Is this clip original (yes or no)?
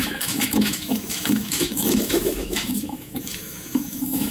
no